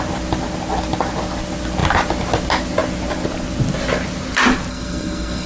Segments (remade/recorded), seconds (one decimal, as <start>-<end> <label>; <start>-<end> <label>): 0.0-4.7 recorded; 4.7-5.5 remade